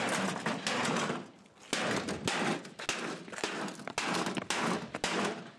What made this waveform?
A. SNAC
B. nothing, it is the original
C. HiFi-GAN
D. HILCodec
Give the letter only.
B